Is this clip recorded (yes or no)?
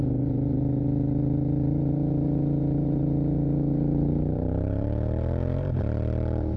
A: no